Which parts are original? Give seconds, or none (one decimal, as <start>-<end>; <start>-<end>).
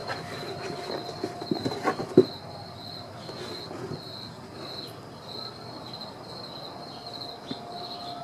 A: 0.0-8.2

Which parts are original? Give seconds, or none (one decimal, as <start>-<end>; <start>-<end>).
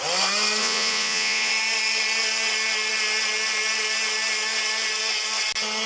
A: 0.0-0.6; 1.5-5.9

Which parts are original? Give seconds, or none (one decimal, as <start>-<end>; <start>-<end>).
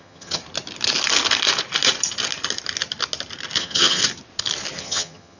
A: 0.4-3.6; 4.0-4.8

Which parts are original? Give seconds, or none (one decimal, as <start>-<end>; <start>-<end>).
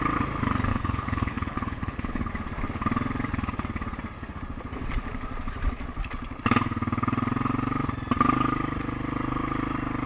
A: 0.0-0.7; 2.3-10.1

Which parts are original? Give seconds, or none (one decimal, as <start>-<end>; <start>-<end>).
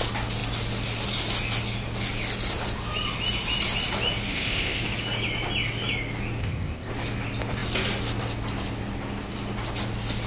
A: 0.0-4.3; 4.8-6.4; 6.9-10.3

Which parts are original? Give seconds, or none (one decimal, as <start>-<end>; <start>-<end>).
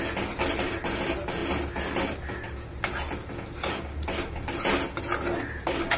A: 0.0-6.0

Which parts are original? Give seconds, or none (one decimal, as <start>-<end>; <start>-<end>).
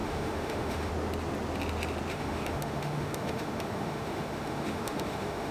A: 0.9-2.1